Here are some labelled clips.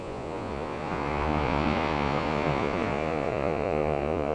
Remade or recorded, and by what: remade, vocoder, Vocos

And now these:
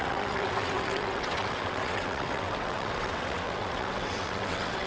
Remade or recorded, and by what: remade, vocoder, WaveNeXt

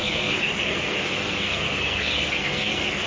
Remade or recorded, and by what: remade, codec, SNAC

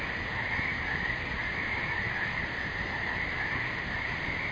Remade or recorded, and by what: remade, vocoder, BigVGAN v2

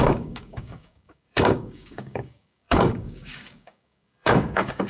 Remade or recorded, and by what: remade, codec, DAC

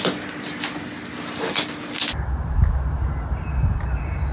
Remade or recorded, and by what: recorded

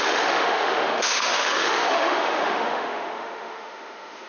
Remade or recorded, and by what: remade, autoencoder, DAC-VAE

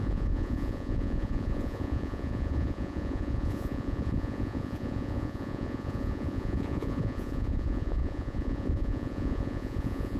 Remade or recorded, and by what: remade, vocoder, Vocos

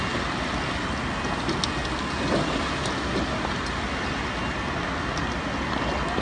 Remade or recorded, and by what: recorded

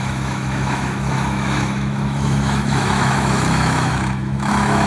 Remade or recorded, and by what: remade, autoencoder, DAC-VAE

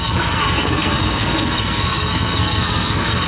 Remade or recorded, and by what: remade, codec, SNAC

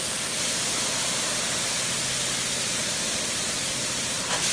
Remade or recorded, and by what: recorded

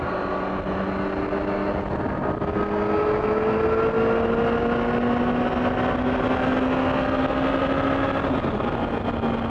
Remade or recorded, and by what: recorded